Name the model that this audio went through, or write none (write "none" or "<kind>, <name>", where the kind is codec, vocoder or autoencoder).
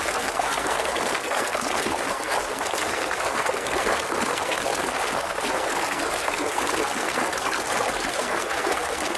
codec, SNAC